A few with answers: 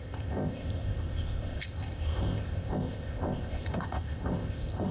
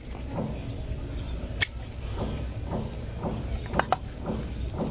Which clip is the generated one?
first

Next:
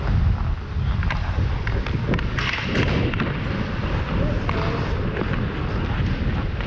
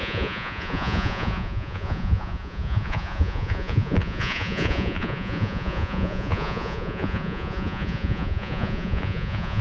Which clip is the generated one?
second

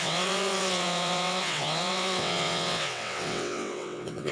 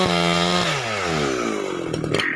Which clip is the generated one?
first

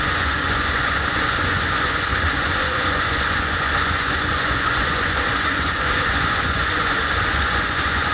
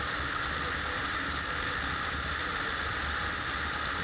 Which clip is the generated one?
first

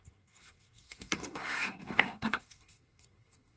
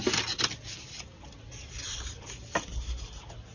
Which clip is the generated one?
first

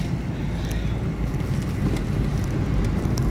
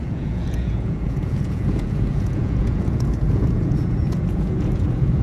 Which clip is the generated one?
second